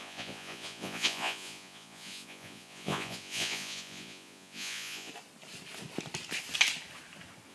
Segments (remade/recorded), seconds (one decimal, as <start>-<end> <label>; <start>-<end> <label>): 0.0-5.1 remade; 5.1-7.5 recorded